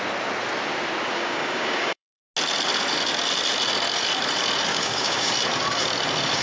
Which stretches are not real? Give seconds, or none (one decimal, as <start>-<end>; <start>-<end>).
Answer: 1.1-2.2; 4.7-5.3